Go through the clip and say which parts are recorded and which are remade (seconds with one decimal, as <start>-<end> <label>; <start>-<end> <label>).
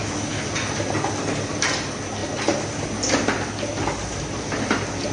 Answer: 0.0-0.5 remade; 0.5-5.1 recorded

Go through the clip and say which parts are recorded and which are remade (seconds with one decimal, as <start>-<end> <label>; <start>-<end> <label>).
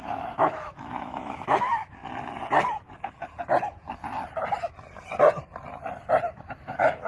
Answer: 0.0-2.0 remade; 2.0-6.3 recorded; 6.3-7.1 remade